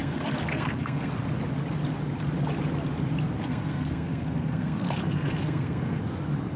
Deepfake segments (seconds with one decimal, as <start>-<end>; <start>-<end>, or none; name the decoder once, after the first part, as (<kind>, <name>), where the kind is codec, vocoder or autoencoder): 0.0-1.1 (codec, SNAC); 3.4-6.0